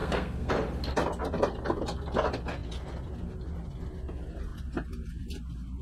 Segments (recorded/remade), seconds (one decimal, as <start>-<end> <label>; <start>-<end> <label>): 0.0-0.5 remade; 0.5-5.8 recorded